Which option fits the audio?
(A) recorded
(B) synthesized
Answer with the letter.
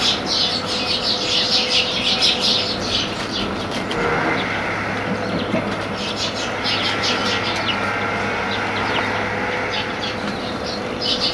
A